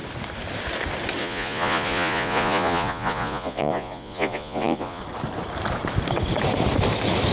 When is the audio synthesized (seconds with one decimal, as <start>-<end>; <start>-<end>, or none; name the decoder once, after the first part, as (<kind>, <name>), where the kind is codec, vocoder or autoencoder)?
1.2-5.0 (vocoder, Vocos)